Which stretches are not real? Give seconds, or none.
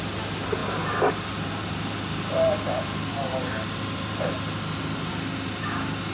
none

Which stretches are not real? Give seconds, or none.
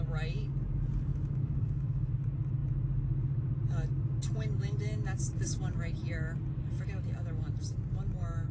1.1-2.1 (autoencoder, DAC-VAE)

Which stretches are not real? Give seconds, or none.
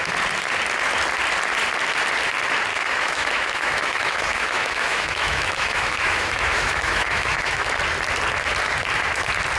2.7-7.7 (autoencoder, DAC-VAE)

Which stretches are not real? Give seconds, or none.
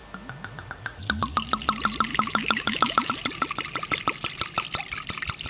2.1-3.1 (autoencoder, DAC-VAE)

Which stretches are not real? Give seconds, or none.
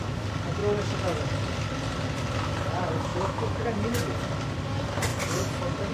3.1-3.6 (autoencoder, DAC-VAE)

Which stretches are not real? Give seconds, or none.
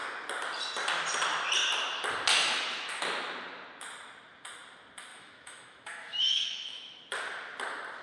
2.4-3.0 (autoencoder, DAC-VAE); 5.1-7.0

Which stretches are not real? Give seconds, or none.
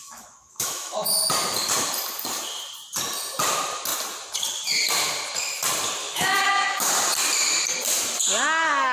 0.0-1.1 (autoencoder, DAC-VAE); 6.0-6.9